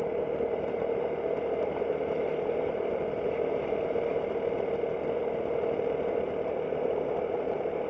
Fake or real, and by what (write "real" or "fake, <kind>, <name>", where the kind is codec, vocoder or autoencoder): real